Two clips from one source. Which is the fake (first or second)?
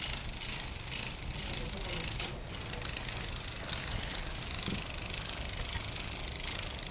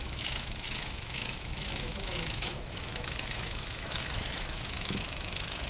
second